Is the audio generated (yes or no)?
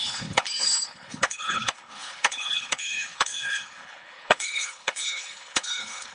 yes